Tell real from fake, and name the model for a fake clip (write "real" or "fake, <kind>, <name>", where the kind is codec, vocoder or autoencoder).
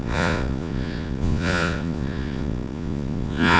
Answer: fake, vocoder, Vocos